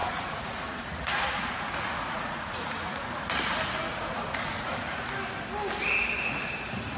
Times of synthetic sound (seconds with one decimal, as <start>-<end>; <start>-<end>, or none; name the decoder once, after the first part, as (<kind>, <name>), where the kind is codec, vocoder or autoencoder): 0.0-3.1 (vocoder, Vocos); 3.9-5.1